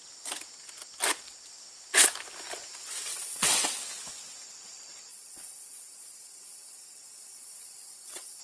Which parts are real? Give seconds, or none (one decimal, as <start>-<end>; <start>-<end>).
0.0-3.1; 3.8-5.1